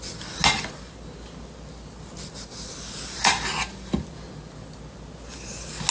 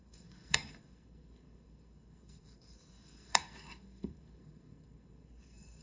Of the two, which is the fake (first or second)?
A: second